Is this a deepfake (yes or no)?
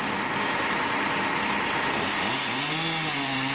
no